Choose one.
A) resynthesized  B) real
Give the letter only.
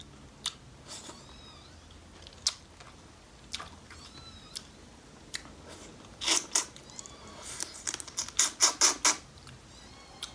B